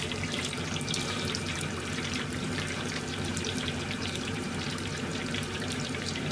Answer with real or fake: fake